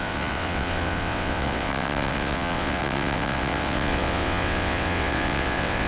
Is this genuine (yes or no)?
no